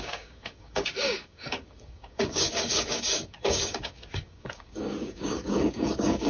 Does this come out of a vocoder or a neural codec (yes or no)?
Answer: yes